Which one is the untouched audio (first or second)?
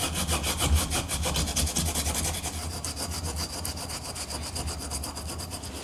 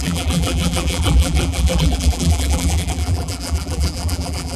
first